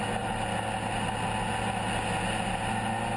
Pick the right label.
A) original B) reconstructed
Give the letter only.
A